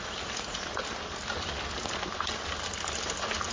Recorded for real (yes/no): yes